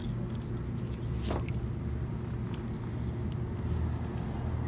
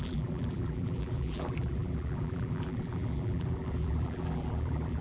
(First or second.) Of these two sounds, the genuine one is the first